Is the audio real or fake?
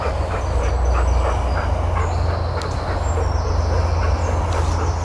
real